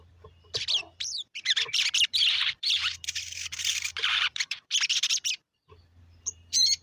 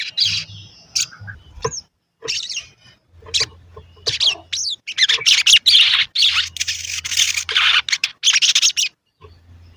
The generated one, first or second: first